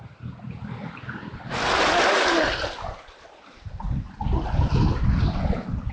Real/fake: real